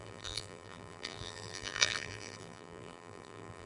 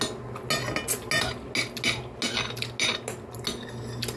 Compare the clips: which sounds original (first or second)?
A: second